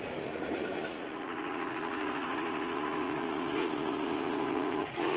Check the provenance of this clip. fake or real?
fake